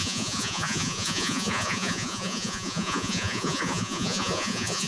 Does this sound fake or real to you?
fake